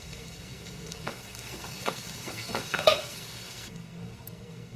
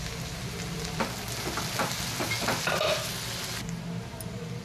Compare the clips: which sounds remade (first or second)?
first